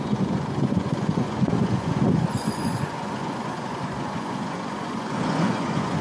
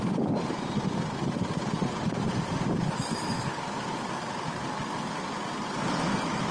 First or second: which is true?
second